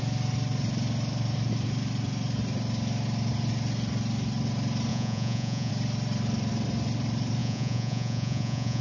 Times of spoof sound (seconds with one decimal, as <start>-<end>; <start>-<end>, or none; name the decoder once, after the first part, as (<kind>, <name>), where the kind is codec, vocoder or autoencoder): 4.9-5.7 (vocoder, Vocos); 7.4-8.8